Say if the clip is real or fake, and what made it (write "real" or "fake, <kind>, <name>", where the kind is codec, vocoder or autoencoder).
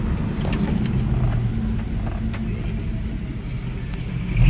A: real